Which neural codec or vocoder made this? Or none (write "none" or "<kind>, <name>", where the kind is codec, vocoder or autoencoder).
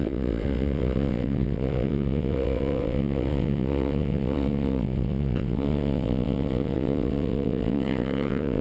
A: vocoder, WaveNeXt